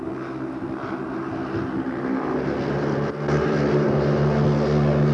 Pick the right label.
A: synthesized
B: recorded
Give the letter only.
B